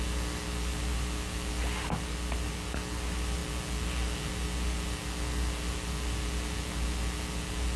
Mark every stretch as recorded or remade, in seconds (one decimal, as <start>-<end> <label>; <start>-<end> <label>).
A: 0.0-0.9 recorded; 0.9-1.5 remade; 1.5-7.8 recorded